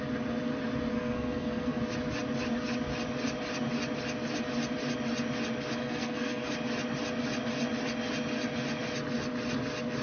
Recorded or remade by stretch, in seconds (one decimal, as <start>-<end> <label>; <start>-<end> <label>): 0.0-0.9 recorded; 0.9-1.8 remade; 1.8-5.8 recorded; 5.8-6.5 remade; 6.5-10.0 recorded